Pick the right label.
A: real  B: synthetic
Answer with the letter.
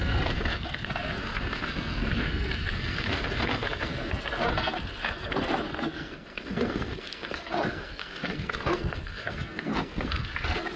B